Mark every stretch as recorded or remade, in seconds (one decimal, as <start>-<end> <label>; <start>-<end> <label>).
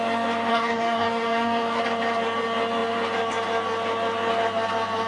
0.0-0.5 recorded; 0.5-1.8 remade; 1.8-5.1 recorded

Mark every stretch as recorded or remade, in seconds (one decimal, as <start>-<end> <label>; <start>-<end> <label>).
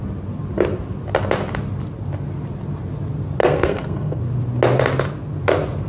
0.0-3.4 recorded; 3.4-4.2 remade; 4.2-5.9 recorded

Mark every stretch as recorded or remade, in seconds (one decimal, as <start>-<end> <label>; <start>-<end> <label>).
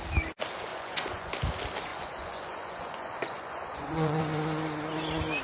0.0-0.7 recorded; 0.7-1.3 remade; 1.3-1.9 recorded; 1.9-4.2 remade; 4.2-5.4 recorded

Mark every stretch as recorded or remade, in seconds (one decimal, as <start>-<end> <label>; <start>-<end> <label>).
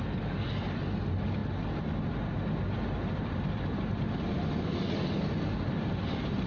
0.0-6.5 recorded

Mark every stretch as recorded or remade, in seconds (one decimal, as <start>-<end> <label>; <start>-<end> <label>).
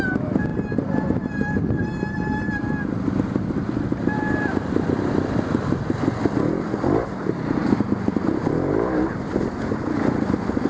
0.0-10.7 recorded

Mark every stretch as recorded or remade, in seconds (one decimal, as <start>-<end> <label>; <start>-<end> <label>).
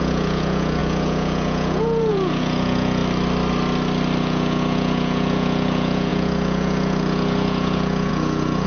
0.0-3.0 remade; 3.0-4.2 recorded; 4.2-8.7 remade